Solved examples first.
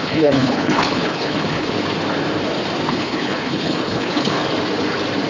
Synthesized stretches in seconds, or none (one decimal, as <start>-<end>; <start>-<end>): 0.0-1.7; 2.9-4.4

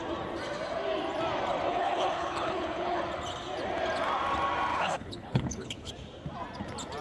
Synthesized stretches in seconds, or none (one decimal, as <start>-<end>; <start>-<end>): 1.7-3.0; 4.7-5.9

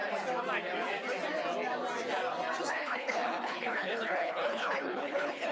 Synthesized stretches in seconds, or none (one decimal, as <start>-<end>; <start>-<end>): 2.7-5.5

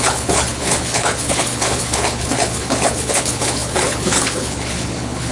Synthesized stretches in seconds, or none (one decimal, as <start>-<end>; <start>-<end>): 0.0-5.3

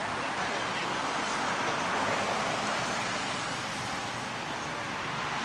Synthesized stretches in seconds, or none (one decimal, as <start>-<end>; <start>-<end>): none

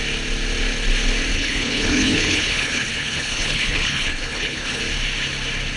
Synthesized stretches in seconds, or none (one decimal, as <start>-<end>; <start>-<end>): 1.3-4.8